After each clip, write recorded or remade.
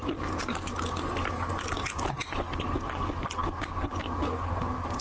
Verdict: recorded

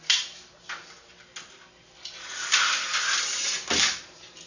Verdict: recorded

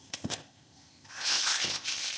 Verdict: remade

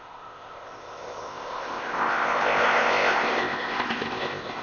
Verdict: remade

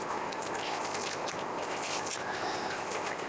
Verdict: remade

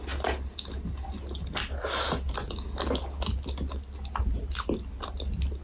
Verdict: recorded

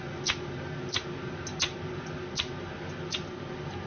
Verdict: recorded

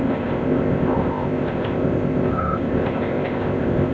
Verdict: remade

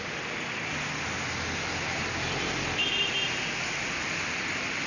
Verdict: recorded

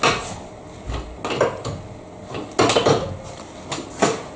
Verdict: recorded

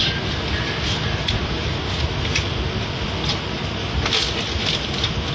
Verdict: recorded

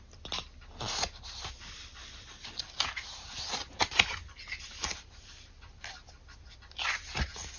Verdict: recorded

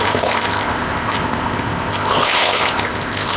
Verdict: remade